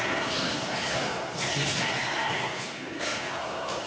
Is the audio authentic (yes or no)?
no